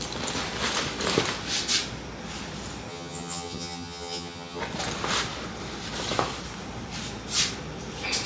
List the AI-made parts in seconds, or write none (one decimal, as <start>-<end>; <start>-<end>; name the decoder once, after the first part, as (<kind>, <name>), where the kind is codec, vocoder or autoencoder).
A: 2.9-4.6 (vocoder, HiFi-GAN)